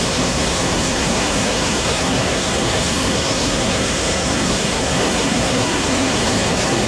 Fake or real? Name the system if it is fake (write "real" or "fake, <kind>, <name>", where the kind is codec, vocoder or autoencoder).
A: fake, codec, SNAC